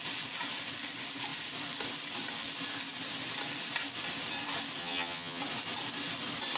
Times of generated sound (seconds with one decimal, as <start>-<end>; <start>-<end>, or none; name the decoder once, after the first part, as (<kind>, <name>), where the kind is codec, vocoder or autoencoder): 4.8-5.4 (vocoder, HiFi-GAN)